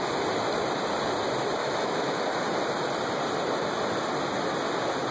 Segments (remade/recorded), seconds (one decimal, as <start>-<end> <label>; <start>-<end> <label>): 0.0-1.6 recorded; 1.6-2.2 remade; 2.2-5.1 recorded